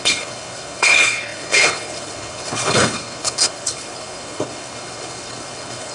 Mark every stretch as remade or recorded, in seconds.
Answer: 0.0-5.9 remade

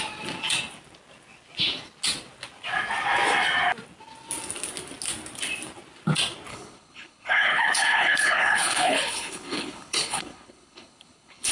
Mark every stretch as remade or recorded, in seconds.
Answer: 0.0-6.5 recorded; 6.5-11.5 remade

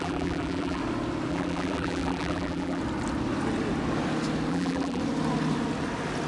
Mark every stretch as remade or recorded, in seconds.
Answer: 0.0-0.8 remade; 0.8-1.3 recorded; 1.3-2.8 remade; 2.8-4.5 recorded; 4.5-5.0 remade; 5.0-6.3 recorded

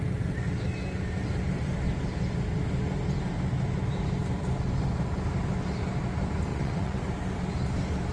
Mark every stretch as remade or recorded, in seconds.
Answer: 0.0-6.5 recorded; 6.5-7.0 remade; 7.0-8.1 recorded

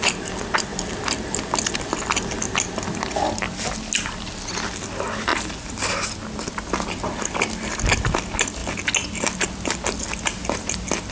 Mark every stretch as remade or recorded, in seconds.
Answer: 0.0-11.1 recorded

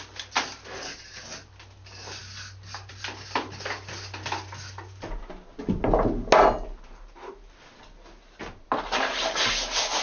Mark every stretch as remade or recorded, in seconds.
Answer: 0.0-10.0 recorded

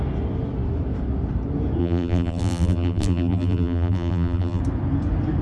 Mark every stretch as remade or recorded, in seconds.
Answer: 0.0-1.8 recorded; 1.8-4.6 remade; 4.6-5.4 recorded